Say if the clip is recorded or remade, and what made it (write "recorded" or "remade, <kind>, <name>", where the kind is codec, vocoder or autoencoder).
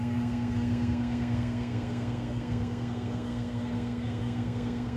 remade, codec, SNAC